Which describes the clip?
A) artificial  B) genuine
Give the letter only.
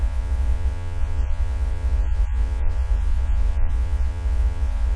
A